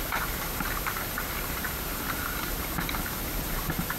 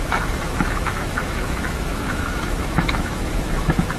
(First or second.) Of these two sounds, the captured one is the first